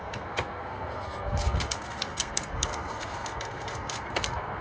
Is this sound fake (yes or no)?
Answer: yes